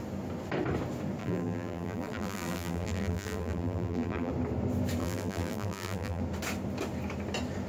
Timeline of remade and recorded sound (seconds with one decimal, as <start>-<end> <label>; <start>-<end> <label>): 0.0-1.2 recorded; 1.2-4.3 remade; 4.3-5.0 recorded; 5.0-6.2 remade; 6.2-7.7 recorded

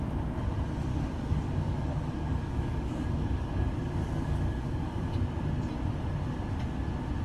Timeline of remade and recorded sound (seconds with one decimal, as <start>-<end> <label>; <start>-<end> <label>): 0.0-0.9 recorded; 0.9-5.1 remade; 5.1-7.2 recorded